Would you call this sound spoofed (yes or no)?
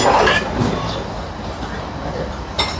no